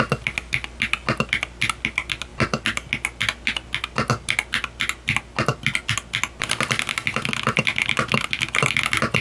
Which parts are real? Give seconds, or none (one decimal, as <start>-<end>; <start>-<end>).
0.0-9.2